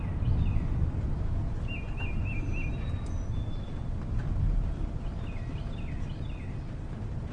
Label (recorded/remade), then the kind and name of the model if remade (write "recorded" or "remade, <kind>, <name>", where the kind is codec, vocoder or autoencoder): recorded